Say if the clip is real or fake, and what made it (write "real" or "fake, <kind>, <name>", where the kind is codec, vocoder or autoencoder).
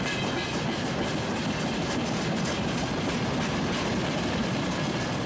fake, vocoder, BigVGAN v2